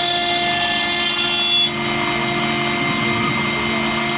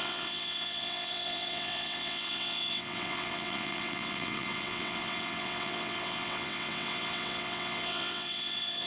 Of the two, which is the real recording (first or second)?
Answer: first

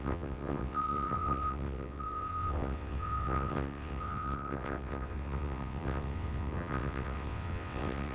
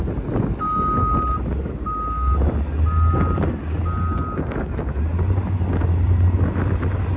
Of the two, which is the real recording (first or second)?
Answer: second